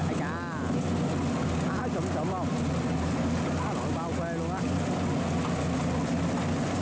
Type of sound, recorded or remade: recorded